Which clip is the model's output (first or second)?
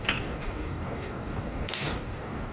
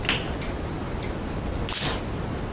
first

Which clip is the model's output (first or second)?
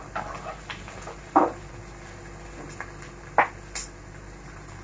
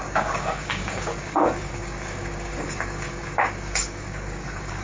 second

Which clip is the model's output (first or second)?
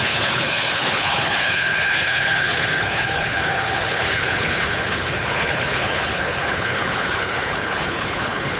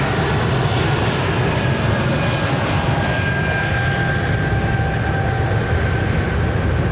first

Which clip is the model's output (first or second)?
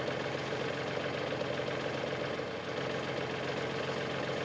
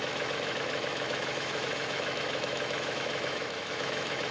second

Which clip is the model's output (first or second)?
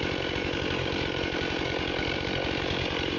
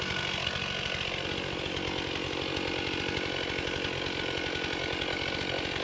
first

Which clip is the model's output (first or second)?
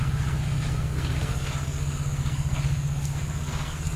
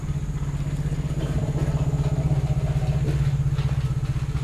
first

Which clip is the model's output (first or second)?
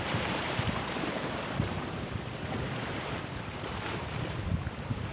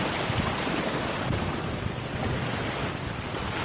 first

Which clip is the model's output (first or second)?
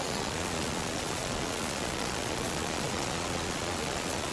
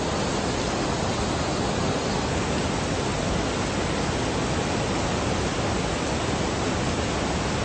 first